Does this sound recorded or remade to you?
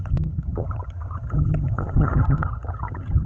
remade